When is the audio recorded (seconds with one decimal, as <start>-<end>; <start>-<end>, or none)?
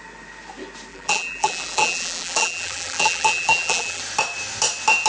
0.0-0.9; 4.0-5.1